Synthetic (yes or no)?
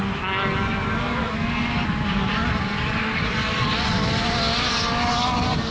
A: no